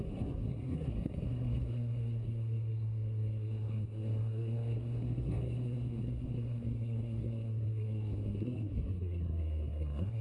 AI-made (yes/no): yes